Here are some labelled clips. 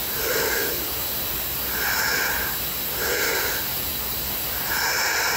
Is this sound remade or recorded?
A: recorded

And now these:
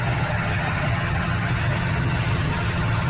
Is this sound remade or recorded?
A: remade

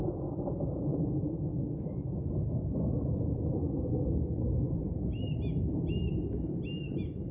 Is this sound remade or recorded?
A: recorded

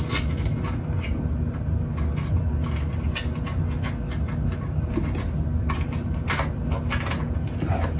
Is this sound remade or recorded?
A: recorded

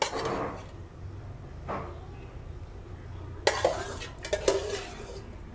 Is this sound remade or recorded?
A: recorded